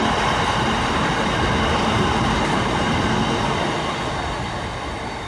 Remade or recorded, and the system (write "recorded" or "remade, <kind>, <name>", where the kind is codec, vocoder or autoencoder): recorded